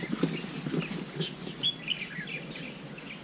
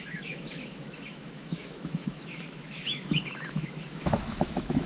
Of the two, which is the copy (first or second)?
second